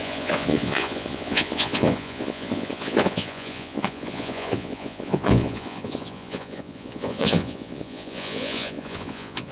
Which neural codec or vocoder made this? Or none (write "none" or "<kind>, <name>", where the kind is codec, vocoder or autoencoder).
vocoder, Vocos